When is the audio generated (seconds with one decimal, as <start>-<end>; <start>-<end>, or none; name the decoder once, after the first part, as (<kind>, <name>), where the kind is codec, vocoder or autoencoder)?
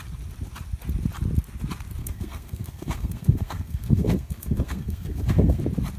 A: 2.0-5.6 (codec, SNAC)